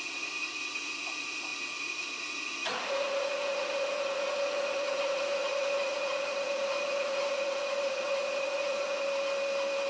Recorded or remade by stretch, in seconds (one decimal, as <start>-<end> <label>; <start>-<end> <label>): 0.0-9.0 remade; 9.0-9.9 recorded